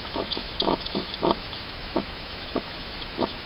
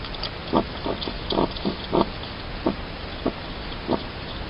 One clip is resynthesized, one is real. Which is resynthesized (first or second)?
first